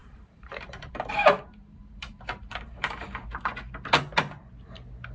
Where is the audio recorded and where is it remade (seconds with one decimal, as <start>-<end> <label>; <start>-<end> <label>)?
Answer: 0.0-3.1 remade; 3.1-5.1 recorded

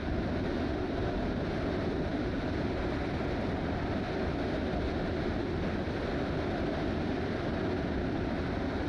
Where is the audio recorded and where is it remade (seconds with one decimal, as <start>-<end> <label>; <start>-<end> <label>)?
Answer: 0.0-8.9 recorded

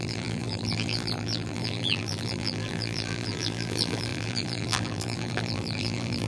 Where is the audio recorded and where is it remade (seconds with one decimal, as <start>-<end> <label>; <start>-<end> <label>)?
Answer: 0.0-6.3 remade

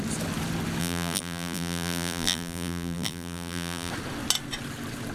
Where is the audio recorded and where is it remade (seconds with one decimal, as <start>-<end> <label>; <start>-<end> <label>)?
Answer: 0.0-0.8 recorded; 0.8-3.9 remade; 3.9-5.1 recorded

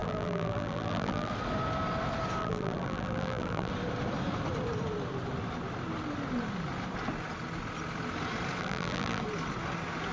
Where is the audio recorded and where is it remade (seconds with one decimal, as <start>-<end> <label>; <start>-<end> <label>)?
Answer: 0.0-1.3 remade; 1.3-2.4 recorded; 2.4-3.7 remade; 3.7-8.6 recorded; 8.6-9.2 remade; 9.2-10.1 recorded

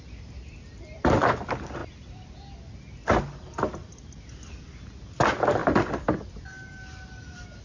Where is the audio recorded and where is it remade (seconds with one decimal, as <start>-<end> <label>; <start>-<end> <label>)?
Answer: 0.0-7.6 recorded

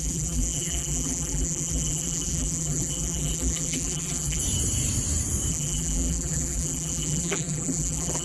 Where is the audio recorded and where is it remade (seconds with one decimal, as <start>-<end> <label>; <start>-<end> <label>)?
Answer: 0.0-4.4 remade; 4.4-5.5 recorded; 5.5-8.2 remade

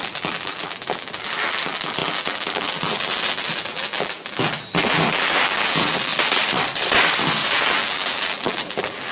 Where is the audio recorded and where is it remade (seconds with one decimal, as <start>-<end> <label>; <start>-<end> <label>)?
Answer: 0.0-6.1 remade; 6.1-7.5 recorded; 7.5-9.1 remade